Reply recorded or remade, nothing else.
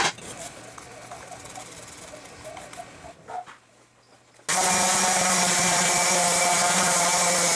recorded